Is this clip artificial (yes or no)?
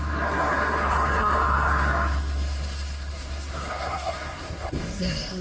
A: yes